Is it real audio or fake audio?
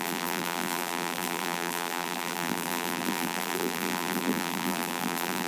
fake